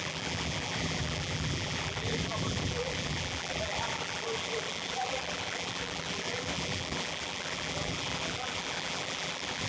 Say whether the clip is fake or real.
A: fake